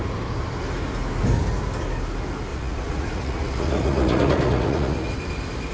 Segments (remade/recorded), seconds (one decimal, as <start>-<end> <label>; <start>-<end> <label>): 0.0-2.5 recorded; 2.5-5.1 remade; 5.1-5.7 recorded